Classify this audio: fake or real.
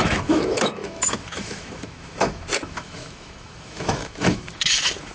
fake